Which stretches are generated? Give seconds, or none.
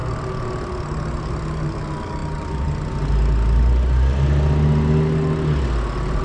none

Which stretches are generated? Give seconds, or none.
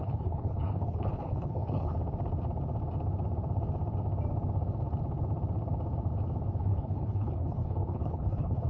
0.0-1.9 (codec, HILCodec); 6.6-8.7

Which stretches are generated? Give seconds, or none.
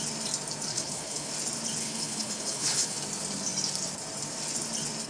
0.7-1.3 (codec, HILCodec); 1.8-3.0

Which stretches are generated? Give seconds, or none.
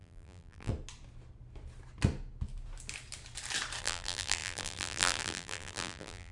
0.0-0.7 (vocoder, BigVGAN v2); 3.8-6.3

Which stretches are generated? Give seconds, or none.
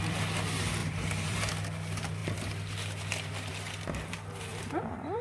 0.8-1.5 (vocoder, BigVGAN v2); 4.5-5.2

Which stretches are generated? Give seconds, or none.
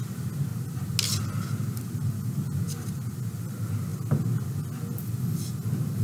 none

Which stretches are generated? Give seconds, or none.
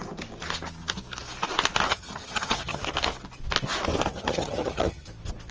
1.9-2.8 (vocoder, HiFi-GAN); 4.1-5.0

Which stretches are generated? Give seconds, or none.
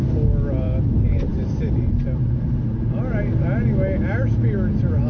none